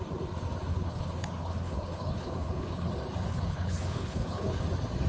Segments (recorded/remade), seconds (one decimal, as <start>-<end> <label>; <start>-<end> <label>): 0.0-0.7 recorded; 0.7-2.9 remade; 2.9-3.3 recorded; 3.3-4.6 remade; 4.6-5.1 recorded